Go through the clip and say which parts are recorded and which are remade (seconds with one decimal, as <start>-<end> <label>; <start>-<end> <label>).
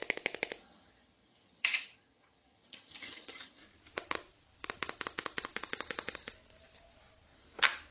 0.0-0.6 recorded; 0.6-3.6 remade; 3.6-7.9 recorded